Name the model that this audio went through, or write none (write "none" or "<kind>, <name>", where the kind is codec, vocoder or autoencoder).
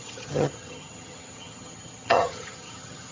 vocoder, HiFi-GAN